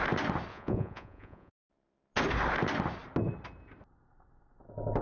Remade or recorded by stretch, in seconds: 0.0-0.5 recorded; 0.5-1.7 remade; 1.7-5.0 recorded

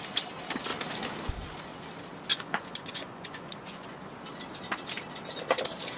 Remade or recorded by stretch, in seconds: 0.0-2.3 recorded; 2.3-4.0 remade; 4.0-6.0 recorded